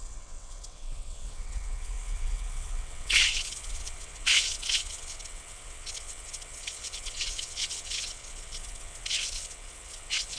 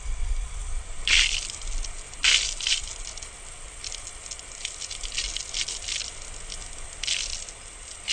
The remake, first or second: first